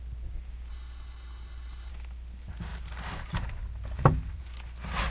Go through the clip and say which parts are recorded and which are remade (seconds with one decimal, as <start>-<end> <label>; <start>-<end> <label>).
0.0-0.7 recorded; 0.7-1.9 remade; 1.9-5.1 recorded